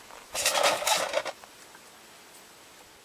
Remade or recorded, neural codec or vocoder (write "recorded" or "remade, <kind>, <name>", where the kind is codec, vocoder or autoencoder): recorded